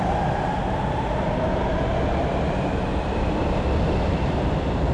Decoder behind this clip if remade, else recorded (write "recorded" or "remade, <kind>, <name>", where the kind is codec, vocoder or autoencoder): recorded